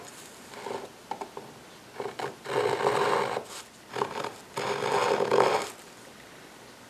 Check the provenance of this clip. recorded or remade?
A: recorded